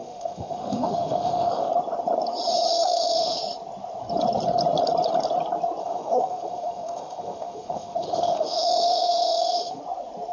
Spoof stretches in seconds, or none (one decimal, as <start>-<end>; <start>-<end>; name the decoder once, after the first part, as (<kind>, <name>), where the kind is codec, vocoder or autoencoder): 0.0-1.7 (autoencoder, DAC-VAE); 2.7-3.4; 5.8-9.8